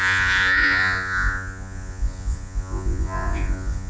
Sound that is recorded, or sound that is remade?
remade